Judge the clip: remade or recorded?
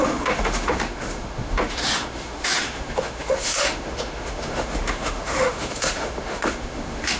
remade